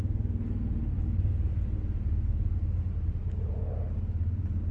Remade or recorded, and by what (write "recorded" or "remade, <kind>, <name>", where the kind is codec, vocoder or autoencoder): recorded